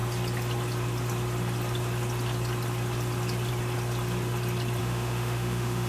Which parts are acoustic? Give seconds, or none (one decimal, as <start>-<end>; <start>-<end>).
0.0-4.8